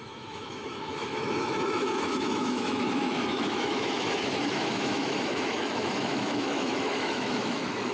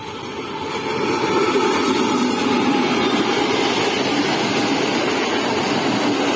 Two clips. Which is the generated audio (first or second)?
first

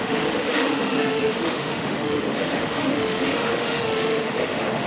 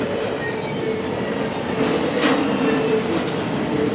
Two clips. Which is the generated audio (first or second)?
first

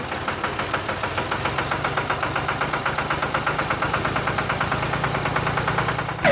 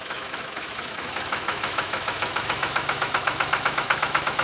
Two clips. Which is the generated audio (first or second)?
second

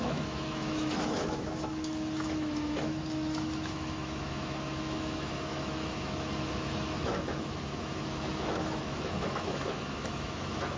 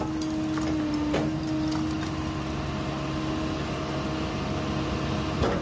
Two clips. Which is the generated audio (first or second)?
first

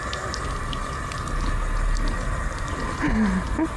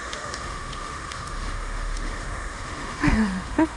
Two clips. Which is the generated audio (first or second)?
second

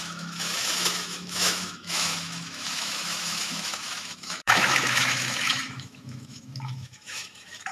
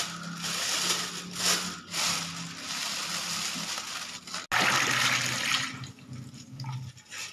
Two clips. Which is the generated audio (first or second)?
first